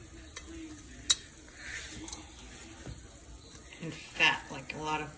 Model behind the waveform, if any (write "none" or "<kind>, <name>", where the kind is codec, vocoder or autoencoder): none